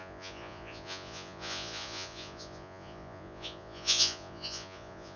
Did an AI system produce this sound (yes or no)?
yes